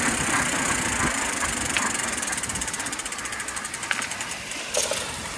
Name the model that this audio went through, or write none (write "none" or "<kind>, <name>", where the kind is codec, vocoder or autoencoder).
none